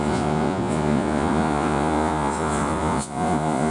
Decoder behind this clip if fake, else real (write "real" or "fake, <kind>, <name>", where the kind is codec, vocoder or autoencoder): fake, vocoder, Vocos